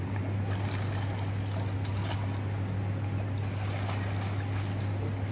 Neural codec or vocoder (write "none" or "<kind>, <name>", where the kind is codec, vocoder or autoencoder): none